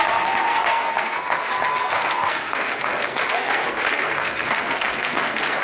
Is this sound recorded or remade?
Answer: remade